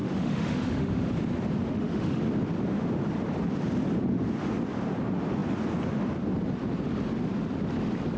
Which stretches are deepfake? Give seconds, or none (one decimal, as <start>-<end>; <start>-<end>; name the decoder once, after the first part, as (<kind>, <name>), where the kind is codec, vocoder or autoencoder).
0.0-1.1 (autoencoder, DAC-VAE); 1.7-2.2